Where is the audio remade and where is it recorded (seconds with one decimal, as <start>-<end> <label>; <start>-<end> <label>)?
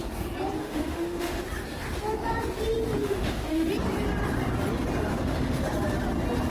0.0-0.6 recorded; 0.6-1.4 remade; 1.4-3.0 recorded; 3.0-3.7 remade; 3.7-5.1 recorded; 5.1-5.6 remade; 5.6-6.5 recorded